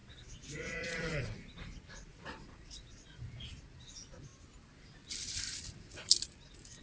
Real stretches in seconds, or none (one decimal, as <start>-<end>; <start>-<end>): 1.2-2.1; 3.2-6.8